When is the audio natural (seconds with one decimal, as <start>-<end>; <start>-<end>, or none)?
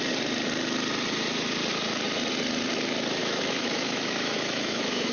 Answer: 0.0-3.2